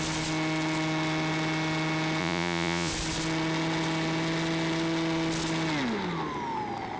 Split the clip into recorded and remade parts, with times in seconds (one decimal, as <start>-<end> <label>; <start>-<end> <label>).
0.0-2.2 recorded; 2.2-2.9 remade; 2.9-7.0 recorded